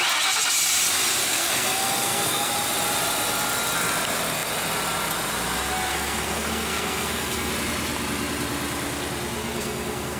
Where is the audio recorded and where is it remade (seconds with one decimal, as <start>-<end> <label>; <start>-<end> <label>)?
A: 0.0-1.2 recorded; 1.2-2.5 remade; 2.5-5.9 recorded; 5.9-7.5 remade; 7.5-9.4 recorded; 9.4-10.2 remade